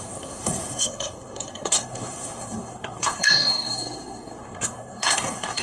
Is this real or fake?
fake